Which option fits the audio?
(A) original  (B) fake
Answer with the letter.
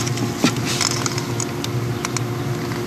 A